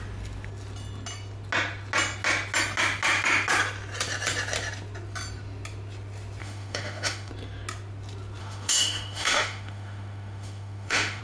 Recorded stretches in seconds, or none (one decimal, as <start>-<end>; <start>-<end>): 0.0-6.4; 7.3-8.4